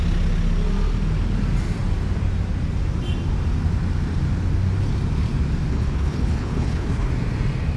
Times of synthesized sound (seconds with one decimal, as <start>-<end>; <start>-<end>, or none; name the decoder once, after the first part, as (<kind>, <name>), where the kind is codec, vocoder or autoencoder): 5.7-7.1 (codec, HILCodec)